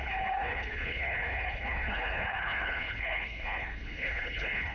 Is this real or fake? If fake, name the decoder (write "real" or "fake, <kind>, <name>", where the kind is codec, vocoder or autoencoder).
fake, codec, HILCodec